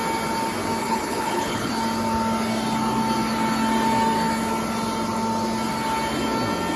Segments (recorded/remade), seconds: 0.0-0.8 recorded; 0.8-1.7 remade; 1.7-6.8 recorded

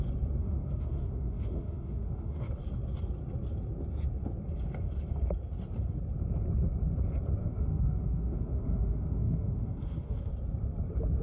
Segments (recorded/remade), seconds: 0.0-0.4 recorded; 0.4-2.5 remade; 2.5-7.4 recorded; 7.4-10.3 remade; 10.3-11.2 recorded

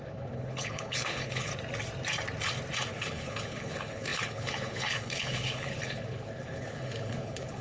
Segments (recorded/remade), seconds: 0.0-1.5 remade; 1.5-2.9 recorded; 2.9-7.6 remade